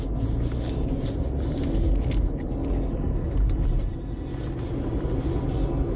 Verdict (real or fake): real